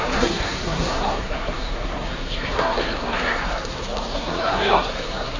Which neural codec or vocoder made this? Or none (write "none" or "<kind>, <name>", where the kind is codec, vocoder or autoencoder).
codec, SNAC